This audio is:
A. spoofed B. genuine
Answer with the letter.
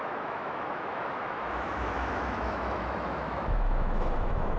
A